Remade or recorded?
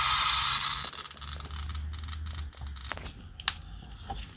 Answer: recorded